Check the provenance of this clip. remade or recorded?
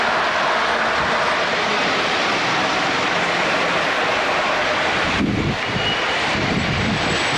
recorded